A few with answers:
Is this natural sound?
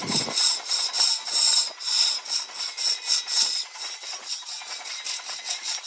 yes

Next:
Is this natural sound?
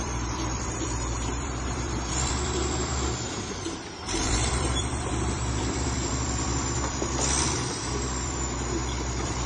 no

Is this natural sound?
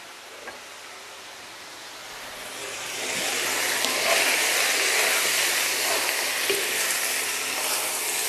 yes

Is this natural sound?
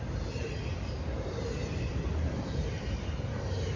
yes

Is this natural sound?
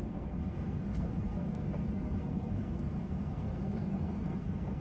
no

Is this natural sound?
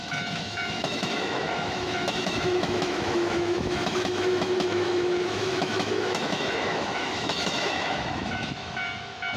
no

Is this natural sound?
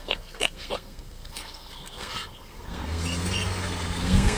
no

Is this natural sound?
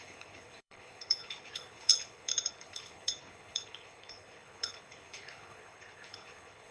no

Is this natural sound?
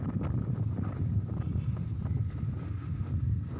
yes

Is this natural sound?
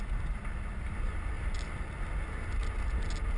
yes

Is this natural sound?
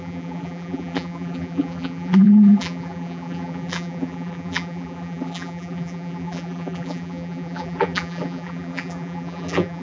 no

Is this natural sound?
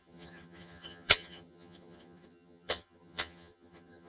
no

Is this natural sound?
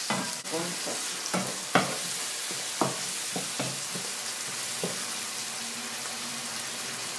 yes